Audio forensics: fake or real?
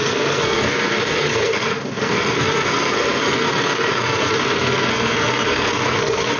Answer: fake